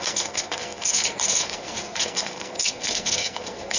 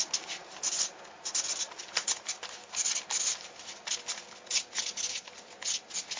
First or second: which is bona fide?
second